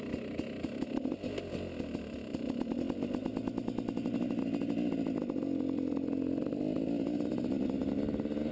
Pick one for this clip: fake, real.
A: real